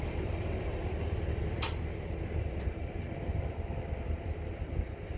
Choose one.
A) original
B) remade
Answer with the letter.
A